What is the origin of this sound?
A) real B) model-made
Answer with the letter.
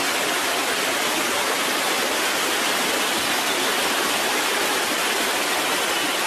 A